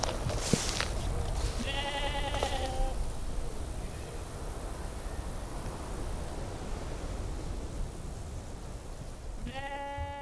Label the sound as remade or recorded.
recorded